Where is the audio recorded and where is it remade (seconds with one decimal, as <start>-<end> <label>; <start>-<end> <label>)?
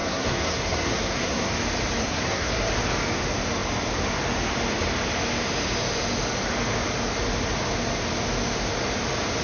0.0-1.5 remade; 1.5-2.0 recorded; 2.0-2.7 remade; 2.7-9.4 recorded